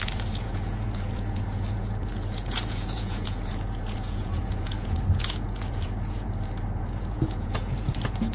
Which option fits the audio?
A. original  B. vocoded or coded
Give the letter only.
B